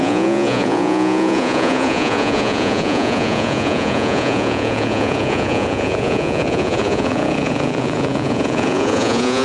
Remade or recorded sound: remade